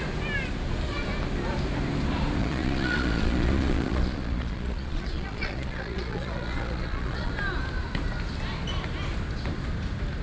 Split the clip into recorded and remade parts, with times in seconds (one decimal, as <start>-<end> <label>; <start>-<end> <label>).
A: 0.0-2.4 recorded; 2.4-7.3 remade; 7.3-10.2 recorded

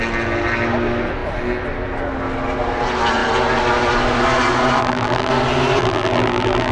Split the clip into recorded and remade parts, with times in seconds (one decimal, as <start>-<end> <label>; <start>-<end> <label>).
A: 0.0-4.8 recorded; 4.8-5.3 remade; 5.3-5.8 recorded; 5.8-6.7 remade

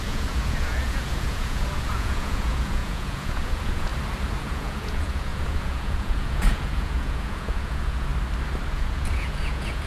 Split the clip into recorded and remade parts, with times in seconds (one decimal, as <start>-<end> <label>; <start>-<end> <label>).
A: 0.0-3.9 remade; 3.9-4.4 recorded; 4.4-8.1 remade; 8.1-8.7 recorded; 8.7-9.9 remade

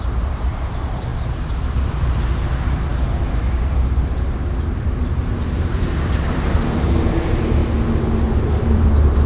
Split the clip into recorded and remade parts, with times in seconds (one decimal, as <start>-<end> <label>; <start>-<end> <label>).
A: 0.0-7.6 remade; 7.6-8.6 recorded; 8.6-9.3 remade